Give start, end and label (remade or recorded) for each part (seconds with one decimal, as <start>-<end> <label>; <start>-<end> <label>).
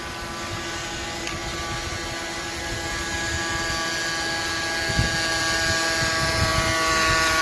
0.0-7.4 recorded